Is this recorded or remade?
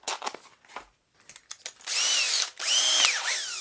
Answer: recorded